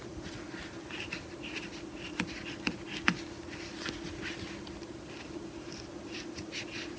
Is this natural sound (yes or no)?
yes